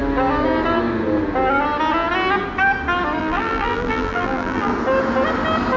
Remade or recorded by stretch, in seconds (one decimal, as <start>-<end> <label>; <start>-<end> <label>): 0.0-3.2 recorded; 3.2-4.7 remade; 4.7-5.8 recorded